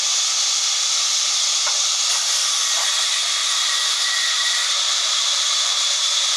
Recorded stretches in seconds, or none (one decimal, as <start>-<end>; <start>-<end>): 0.0-1.1; 2.2-2.6